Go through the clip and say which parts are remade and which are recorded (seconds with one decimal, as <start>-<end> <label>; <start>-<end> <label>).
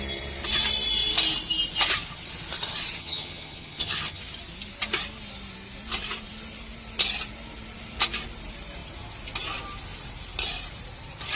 0.0-3.0 recorded; 3.0-4.2 remade; 4.2-11.4 recorded